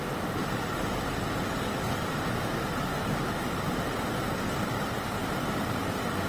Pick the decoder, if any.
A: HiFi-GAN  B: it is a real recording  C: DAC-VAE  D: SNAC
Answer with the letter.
B